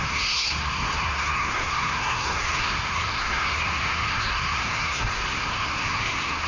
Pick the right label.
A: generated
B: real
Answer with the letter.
A